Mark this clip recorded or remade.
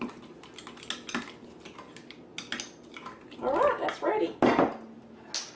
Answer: recorded